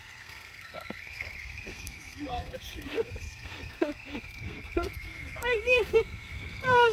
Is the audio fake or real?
fake